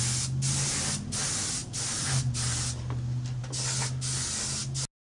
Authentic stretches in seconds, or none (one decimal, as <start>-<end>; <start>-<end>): 0.0-5.1